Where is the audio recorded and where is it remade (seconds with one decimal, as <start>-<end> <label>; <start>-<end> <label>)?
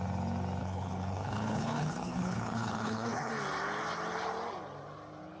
0.0-0.6 recorded; 0.6-3.3 remade; 3.3-5.4 recorded